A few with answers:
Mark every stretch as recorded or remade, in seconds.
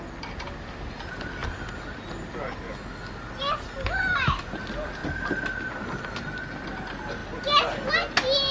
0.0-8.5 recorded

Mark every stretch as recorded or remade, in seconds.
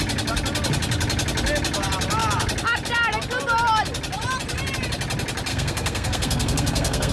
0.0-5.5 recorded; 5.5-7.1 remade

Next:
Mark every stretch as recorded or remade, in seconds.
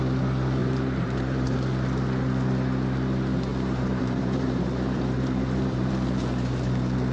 0.0-0.6 recorded; 0.6-1.5 remade; 1.5-3.5 recorded; 3.5-5.9 remade; 5.9-7.1 recorded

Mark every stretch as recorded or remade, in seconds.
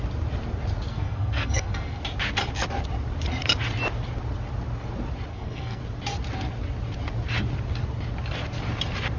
0.0-0.9 recorded; 0.9-2.0 remade; 2.0-5.3 recorded; 5.3-5.8 remade; 5.8-9.2 recorded